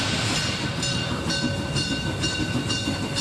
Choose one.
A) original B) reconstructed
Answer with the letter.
A